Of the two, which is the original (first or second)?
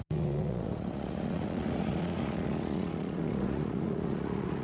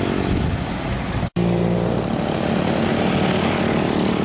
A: second